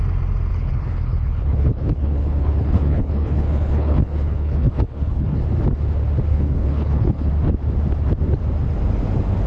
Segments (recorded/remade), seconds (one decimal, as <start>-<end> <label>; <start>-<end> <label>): 0.0-0.5 recorded; 0.5-5.4 remade; 5.4-6.3 recorded; 6.3-7.3 remade; 7.3-9.5 recorded